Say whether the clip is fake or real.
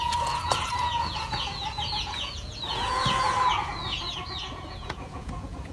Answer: fake